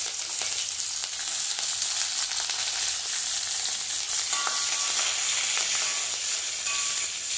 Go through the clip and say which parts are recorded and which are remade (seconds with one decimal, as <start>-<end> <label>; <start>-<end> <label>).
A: 0.0-7.4 recorded